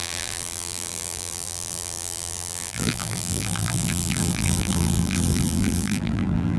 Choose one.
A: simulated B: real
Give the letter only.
A